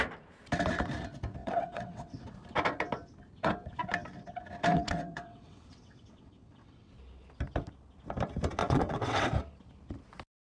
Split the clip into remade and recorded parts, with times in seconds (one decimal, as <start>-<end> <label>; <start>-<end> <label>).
0.0-1.4 recorded; 1.4-2.3 remade; 2.3-4.7 recorded; 4.7-6.9 remade; 6.9-8.6 recorded; 8.6-9.3 remade; 9.3-10.4 recorded